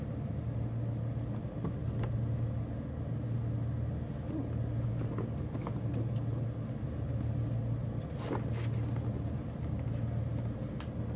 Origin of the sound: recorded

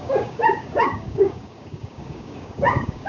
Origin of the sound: remade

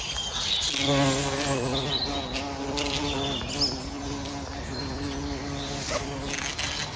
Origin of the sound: recorded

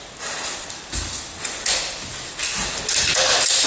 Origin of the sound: recorded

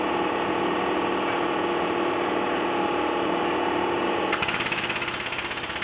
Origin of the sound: recorded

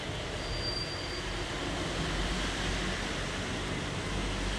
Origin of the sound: recorded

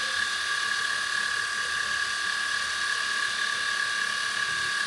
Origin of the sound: recorded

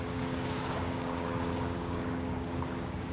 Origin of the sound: remade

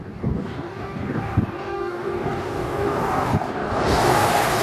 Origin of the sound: remade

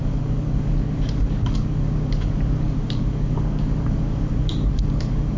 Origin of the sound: remade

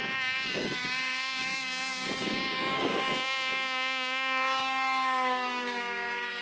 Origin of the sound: remade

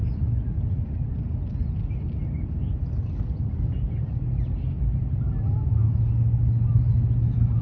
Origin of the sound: recorded